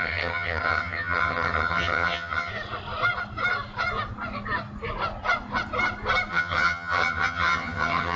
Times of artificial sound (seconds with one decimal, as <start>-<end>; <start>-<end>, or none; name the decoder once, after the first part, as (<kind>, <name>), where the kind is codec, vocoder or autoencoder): 0.0-2.5 (vocoder, HiFi-GAN); 6.3-8.2